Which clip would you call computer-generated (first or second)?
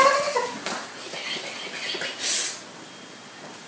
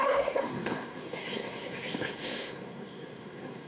second